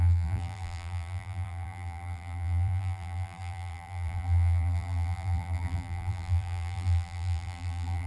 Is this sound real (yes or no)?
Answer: no